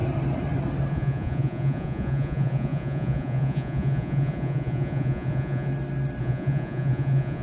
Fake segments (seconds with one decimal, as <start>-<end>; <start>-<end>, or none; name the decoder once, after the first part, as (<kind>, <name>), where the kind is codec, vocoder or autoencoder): 0.9-5.7 (vocoder, Vocos); 6.2-7.4